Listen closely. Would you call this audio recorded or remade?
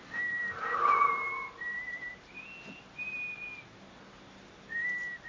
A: recorded